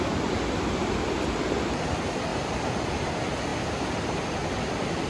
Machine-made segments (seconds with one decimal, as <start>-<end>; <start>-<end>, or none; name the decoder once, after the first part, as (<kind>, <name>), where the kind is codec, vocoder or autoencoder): 2.3-2.8 (vocoder, BigVGAN v2)